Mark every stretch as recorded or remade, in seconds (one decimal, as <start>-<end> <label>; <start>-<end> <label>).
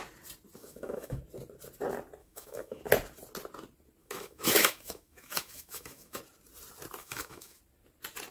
0.0-0.6 recorded; 0.6-1.2 remade; 1.2-2.2 recorded; 2.2-2.8 remade; 2.8-4.0 recorded; 4.0-6.2 remade; 6.2-7.0 recorded; 7.0-7.6 remade; 7.6-8.3 recorded